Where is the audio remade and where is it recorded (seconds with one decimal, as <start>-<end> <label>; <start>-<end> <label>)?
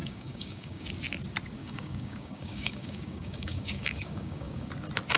0.0-0.9 remade; 0.9-1.6 recorded; 1.6-4.7 remade; 4.7-5.2 recorded